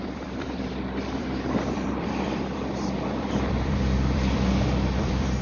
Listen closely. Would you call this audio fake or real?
fake